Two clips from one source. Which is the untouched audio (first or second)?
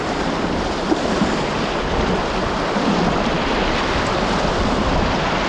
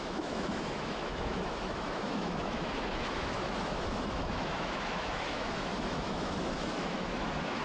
first